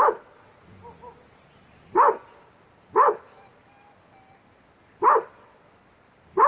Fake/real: real